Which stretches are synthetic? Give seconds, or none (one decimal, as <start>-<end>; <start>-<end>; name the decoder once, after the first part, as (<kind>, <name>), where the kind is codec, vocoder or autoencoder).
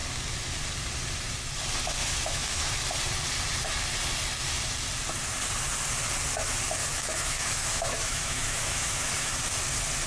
2.0-2.7 (autoencoder, DAC-VAE); 6.8-9.3